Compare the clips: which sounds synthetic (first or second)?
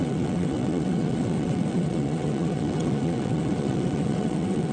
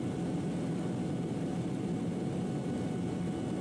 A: first